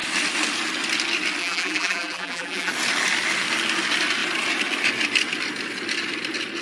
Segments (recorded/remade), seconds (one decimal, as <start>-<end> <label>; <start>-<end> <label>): 0.0-1.4 recorded; 1.4-2.7 remade; 2.7-6.6 recorded